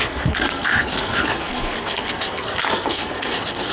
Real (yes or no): no